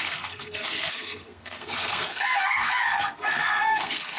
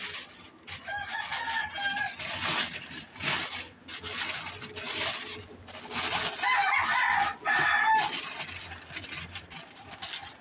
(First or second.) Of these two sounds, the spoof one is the first